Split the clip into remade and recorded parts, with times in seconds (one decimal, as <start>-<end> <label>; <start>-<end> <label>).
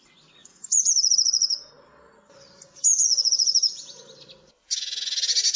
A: 0.0-0.4 recorded; 0.4-1.7 remade; 1.7-2.9 recorded; 2.9-4.0 remade; 4.0-5.6 recorded